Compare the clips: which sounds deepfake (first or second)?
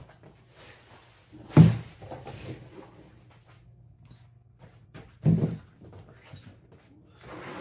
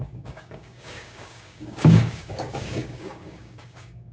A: second